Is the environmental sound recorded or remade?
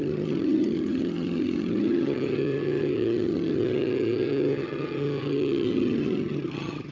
remade